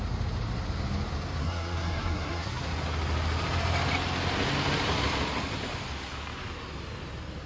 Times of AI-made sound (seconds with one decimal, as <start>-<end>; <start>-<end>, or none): 1.4-2.6